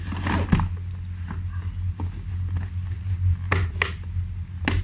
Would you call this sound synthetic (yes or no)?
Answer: no